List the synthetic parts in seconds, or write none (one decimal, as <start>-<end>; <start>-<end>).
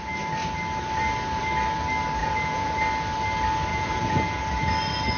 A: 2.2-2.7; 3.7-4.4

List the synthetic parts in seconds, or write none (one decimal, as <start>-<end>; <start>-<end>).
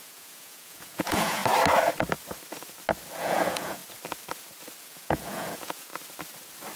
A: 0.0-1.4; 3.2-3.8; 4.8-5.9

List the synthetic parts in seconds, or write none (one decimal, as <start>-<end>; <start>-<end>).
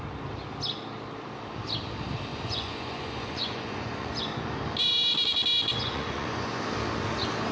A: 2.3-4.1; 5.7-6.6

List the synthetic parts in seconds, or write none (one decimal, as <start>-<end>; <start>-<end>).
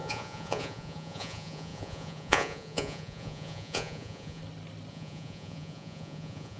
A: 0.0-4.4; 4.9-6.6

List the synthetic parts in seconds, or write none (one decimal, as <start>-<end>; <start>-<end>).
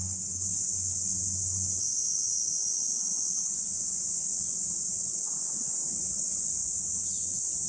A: 0.0-6.6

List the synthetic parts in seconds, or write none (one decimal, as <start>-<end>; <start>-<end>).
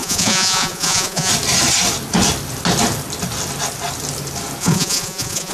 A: 0.0-1.3; 4.6-5.5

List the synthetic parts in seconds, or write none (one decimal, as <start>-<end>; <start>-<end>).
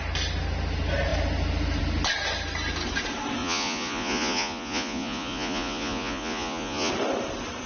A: 3.4-6.9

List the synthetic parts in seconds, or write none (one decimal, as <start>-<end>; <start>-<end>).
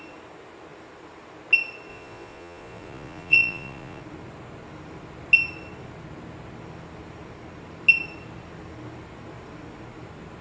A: 1.9-4.0